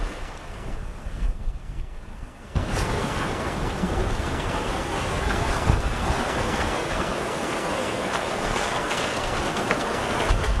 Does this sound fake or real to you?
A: fake